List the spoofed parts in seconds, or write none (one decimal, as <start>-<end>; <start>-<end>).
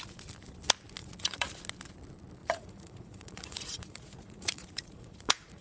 1.0-1.6; 2.4-5.6